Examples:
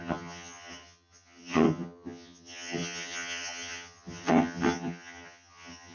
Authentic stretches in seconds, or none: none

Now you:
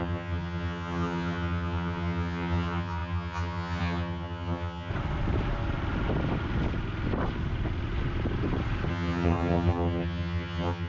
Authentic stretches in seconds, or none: 4.9-8.9

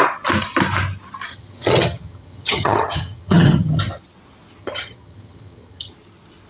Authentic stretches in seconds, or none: 0.0-1.3; 4.0-4.6; 5.9-6.5

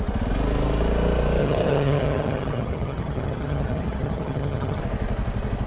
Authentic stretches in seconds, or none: 0.0-1.4; 4.8-5.7